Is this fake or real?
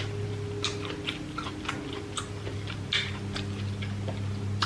real